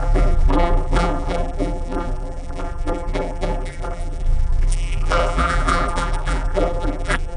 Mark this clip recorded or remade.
remade